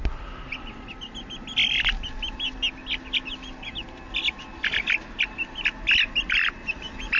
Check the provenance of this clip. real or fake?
real